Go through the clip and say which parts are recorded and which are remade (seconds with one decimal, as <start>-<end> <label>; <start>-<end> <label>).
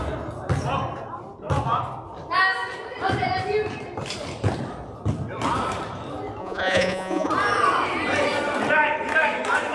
0.0-6.4 recorded; 6.4-7.3 remade; 7.3-9.7 recorded